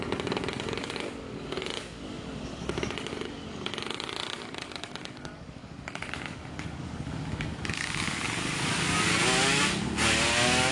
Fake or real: fake